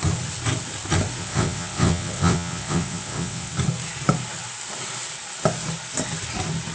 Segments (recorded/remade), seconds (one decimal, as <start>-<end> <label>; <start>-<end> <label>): 0.0-1.2 recorded; 1.2-3.5 remade; 3.5-6.7 recorded